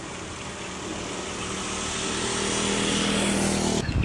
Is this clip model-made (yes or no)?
no